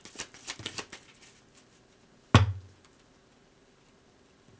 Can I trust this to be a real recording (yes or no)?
yes